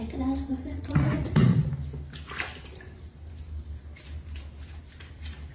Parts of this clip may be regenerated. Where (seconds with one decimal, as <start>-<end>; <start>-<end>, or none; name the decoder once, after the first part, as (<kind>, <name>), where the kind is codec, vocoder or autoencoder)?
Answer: 0.5-1.7 (vocoder, Vocos)